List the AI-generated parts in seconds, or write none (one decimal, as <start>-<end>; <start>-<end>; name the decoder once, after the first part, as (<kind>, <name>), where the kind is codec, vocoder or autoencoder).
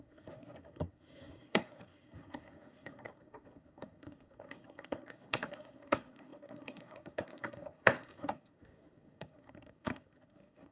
0.0-10.7 (codec, SNAC)